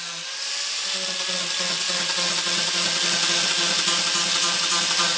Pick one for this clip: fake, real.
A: real